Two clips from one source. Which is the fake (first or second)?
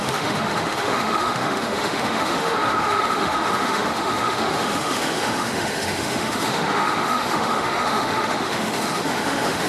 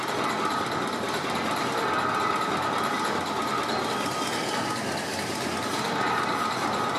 first